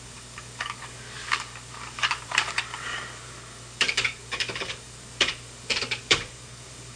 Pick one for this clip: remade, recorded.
remade